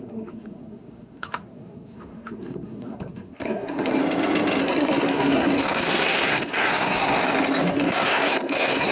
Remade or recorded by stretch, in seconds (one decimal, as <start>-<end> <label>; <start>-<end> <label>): 0.0-4.0 remade; 4.0-4.6 recorded; 4.6-7.2 remade; 7.2-7.7 recorded; 7.7-8.9 remade

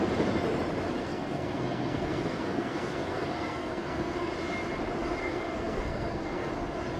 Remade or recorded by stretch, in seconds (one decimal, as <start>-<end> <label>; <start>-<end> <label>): 0.0-1.0 recorded; 1.0-4.3 remade; 4.3-5.2 recorded; 5.2-6.5 remade; 6.5-7.0 recorded

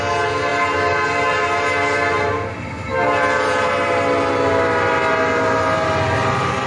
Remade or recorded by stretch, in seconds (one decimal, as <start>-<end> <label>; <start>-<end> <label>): 0.0-6.7 recorded

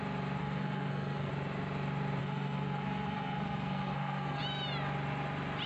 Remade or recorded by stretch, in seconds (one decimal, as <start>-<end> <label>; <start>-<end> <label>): 0.0-0.4 recorded; 0.4-1.3 remade; 1.3-2.2 recorded; 2.2-4.4 remade; 4.4-5.7 recorded